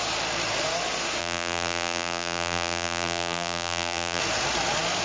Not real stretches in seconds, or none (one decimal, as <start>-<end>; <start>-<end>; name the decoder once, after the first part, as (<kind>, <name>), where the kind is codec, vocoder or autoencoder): 1.2-4.2 (vocoder, BigVGAN v2)